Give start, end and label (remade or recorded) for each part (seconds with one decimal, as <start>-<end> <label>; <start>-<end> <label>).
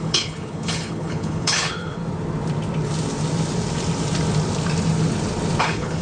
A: 0.0-2.0 remade; 2.0-5.6 recorded; 5.6-6.0 remade